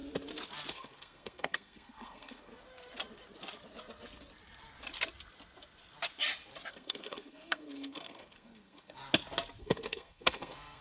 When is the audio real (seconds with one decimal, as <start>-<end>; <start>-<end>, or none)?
0.0-0.7; 2.5-6.7; 9.0-9.6